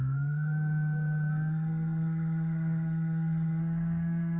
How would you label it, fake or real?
fake